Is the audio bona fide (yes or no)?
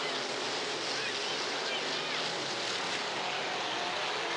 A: yes